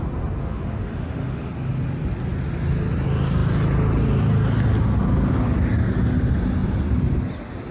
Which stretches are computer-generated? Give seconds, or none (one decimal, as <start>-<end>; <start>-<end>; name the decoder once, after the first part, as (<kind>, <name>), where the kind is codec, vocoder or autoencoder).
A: 0.4-1.5 (autoencoder, DAC-VAE)